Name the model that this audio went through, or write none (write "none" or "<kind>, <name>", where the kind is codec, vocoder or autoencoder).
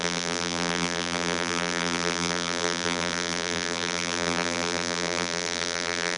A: vocoder, BigVGAN v2